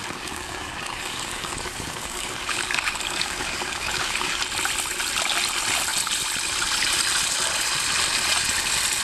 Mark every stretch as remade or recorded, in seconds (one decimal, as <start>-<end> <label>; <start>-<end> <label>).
0.0-4.4 remade; 4.4-9.0 recorded

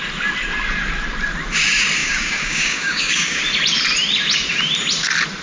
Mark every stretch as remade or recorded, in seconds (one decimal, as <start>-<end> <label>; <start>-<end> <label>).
0.0-2.0 recorded; 2.0-3.4 remade; 3.4-5.4 recorded

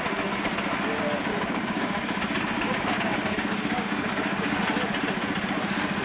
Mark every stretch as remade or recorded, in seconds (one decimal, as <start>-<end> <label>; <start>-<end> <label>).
0.0-1.3 recorded; 1.3-4.6 remade; 4.6-6.0 recorded

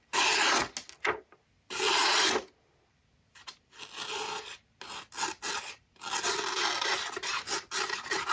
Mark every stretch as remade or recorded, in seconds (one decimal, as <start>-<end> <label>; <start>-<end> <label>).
0.0-8.3 recorded

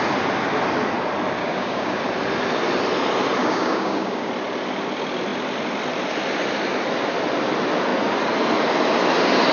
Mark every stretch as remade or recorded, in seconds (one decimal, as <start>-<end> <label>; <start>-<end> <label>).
0.0-1.4 recorded; 1.4-2.0 remade; 2.0-3.4 recorded; 3.4-4.3 remade; 4.3-9.5 recorded